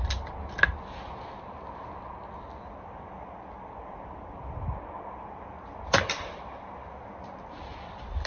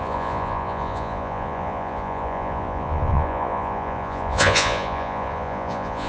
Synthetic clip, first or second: second